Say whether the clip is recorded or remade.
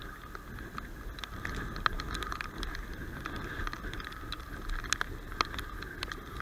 recorded